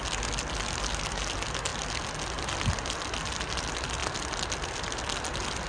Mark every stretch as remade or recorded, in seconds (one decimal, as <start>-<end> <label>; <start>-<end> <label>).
0.0-5.7 recorded